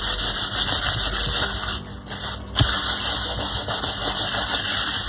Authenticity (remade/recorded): recorded